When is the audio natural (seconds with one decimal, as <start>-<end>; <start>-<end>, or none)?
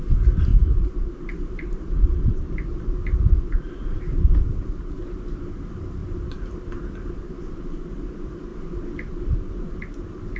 0.0-0.5; 5.2-10.4